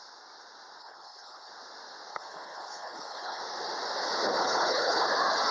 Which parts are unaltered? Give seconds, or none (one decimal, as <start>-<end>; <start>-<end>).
0.0-0.8; 1.5-2.1; 3.4-4.4; 5.0-5.5